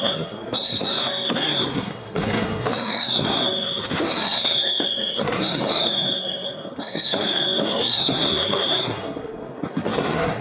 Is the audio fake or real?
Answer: fake